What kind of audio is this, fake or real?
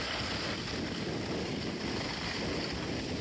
real